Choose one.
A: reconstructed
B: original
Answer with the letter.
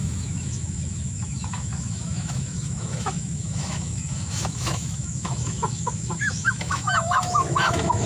A